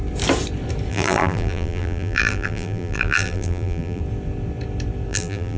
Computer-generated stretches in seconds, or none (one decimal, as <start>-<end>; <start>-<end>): 0.9-4.0; 5.1-5.6